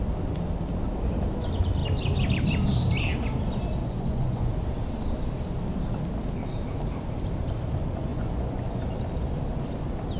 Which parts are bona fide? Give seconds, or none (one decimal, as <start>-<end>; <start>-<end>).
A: 0.0-3.8; 4.5-8.1; 8.8-10.2